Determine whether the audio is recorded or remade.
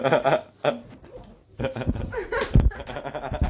recorded